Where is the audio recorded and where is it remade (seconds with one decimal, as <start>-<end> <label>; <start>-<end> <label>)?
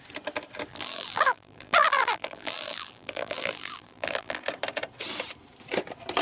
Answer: 0.0-0.7 recorded; 0.7-4.4 remade; 4.4-6.2 recorded